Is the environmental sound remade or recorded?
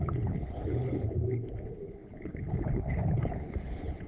remade